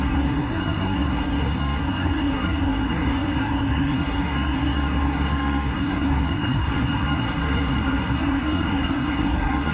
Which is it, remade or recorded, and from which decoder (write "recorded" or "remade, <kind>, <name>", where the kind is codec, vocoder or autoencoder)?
remade, codec, SNAC